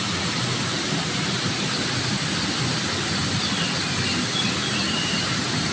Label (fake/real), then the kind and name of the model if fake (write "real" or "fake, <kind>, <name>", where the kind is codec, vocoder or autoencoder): real